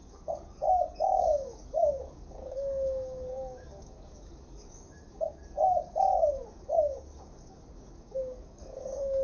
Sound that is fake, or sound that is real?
fake